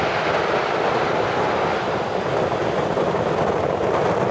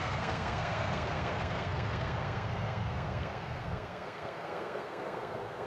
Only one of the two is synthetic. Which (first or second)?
second